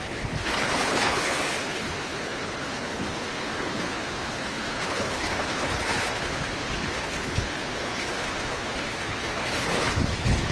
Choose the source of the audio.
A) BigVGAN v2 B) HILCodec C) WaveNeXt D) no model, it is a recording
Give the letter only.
B